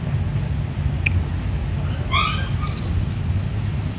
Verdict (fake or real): real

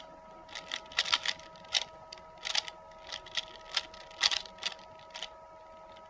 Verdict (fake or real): real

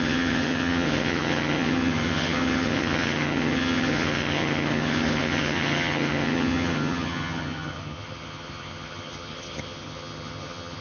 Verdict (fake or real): fake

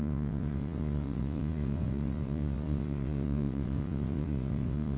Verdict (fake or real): fake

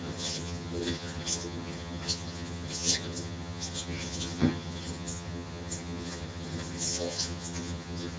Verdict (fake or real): fake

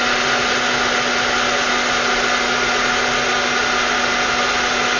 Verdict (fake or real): real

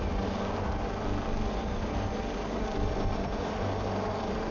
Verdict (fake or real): real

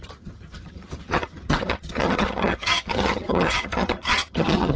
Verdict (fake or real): fake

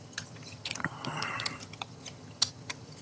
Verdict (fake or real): fake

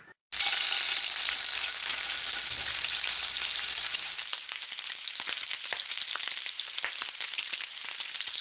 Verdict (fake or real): real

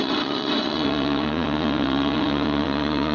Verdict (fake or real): fake